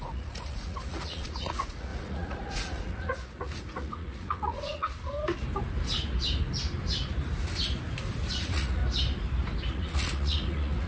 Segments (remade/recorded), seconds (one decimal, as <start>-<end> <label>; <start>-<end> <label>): 0.0-4.9 remade; 4.9-8.3 recorded; 8.3-8.8 remade; 8.8-9.7 recorded; 9.7-10.9 remade